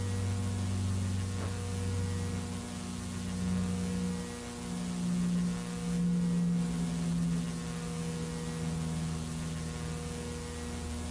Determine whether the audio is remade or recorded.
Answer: recorded